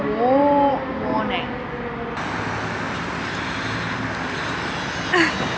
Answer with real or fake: real